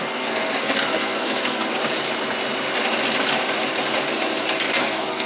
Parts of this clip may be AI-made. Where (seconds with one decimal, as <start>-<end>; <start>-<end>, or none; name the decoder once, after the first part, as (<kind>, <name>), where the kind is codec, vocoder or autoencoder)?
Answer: 0.0-1.8 (codec, SNAC); 4.8-5.3